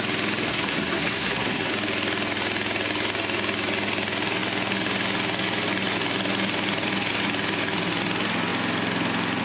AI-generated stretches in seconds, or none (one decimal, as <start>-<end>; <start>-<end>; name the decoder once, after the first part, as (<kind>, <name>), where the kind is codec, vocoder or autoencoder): 0.5-1.7 (codec, SNAC)